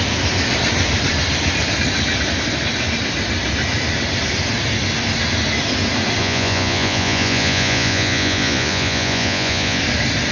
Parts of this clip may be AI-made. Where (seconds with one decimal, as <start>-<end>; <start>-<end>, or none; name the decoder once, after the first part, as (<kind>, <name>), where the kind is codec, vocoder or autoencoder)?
6.2-9.8 (vocoder, Vocos)

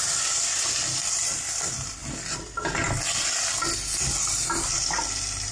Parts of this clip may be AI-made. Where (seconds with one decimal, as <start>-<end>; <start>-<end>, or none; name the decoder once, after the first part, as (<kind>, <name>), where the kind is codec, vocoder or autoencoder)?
none

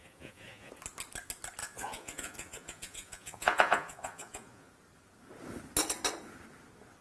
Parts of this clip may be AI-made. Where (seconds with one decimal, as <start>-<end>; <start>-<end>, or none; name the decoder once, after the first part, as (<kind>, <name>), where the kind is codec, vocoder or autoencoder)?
0.0-0.7 (vocoder, Vocos); 1.6-4.7

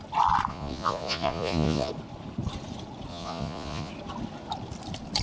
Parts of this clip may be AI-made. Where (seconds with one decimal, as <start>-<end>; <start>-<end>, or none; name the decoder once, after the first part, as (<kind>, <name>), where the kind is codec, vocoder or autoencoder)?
0.5-1.9 (vocoder, Vocos); 3.1-3.9

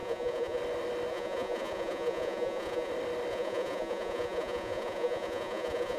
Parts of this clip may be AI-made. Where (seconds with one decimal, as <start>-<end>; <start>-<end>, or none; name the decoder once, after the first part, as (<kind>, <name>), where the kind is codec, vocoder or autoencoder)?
0.0-0.6 (vocoder, Vocos); 1.1-2.9; 3.3-6.0

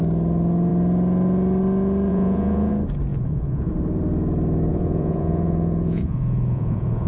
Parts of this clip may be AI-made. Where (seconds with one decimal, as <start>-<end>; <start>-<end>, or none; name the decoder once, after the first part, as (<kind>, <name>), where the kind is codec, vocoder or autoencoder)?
2.1-2.7 (vocoder, Vocos); 3.1-3.7; 4.7-7.1